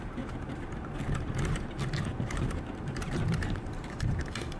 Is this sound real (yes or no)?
no